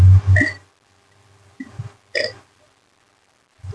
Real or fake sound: real